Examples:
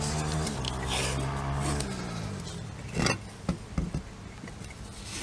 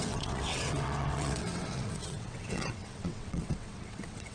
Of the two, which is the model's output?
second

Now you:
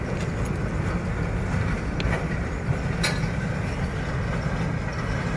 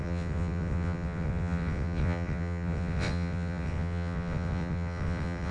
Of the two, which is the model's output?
second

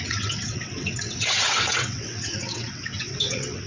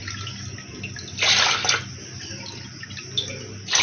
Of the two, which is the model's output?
first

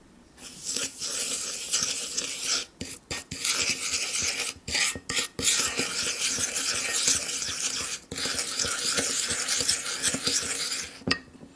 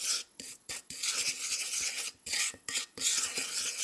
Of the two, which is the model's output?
second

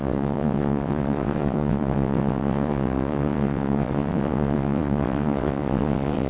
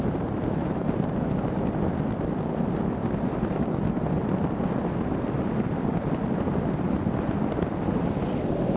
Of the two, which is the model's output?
first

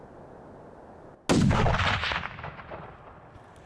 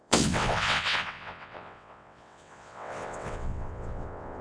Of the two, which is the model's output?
second